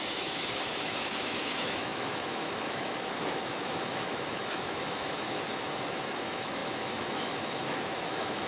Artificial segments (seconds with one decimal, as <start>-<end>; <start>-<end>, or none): 0.0-8.5